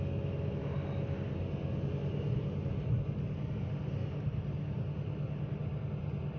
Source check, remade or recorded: recorded